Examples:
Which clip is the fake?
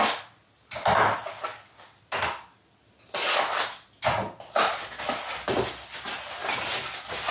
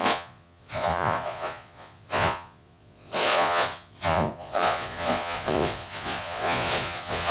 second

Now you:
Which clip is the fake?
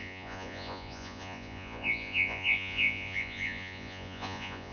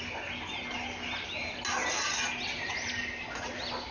first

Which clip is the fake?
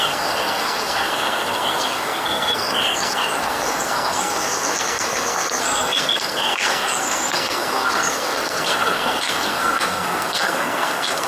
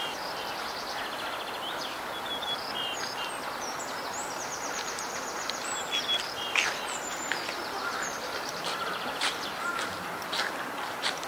first